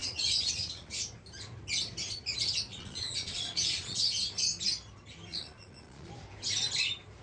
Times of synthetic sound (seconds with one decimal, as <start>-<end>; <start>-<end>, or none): 0.0-0.9; 2.7-4.0; 5.3-6.1